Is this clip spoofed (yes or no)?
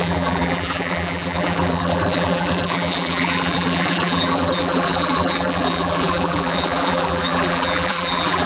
yes